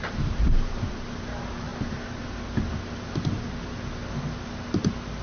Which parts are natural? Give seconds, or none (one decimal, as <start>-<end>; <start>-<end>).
0.5-5.2